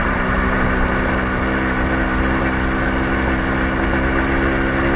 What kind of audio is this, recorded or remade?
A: recorded